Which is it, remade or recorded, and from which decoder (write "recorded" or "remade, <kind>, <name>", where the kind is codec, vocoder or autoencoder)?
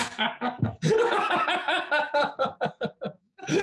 remade, codec, DAC